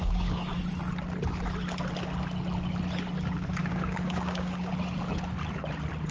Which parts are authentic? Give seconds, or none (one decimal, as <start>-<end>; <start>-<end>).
0.5-3.7; 4.7-6.1